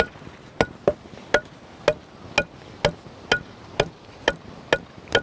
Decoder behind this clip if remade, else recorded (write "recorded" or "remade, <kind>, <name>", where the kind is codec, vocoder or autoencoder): recorded